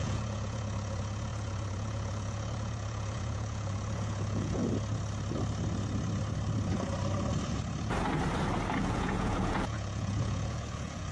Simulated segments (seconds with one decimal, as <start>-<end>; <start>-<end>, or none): 0.0-4.6; 8.8-11.1